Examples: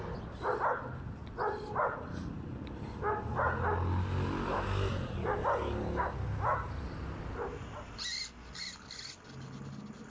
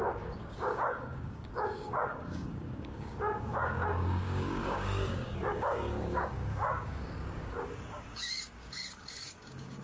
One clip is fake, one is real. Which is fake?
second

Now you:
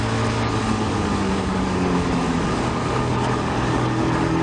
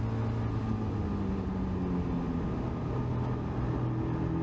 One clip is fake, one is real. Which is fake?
first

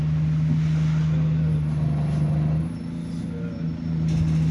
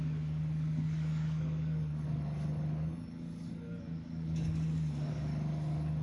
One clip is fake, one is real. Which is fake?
second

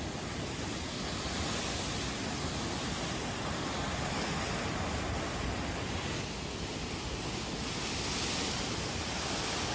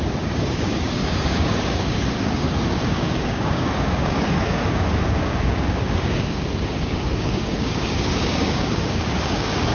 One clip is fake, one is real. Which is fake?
second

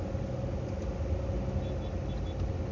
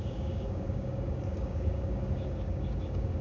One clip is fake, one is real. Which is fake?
second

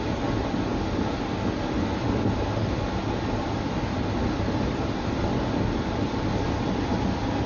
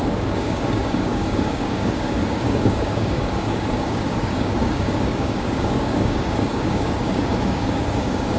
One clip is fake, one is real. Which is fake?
second